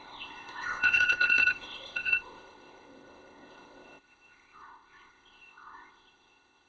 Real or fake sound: fake